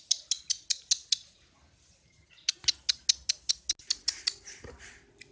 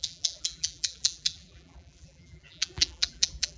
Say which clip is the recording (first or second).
first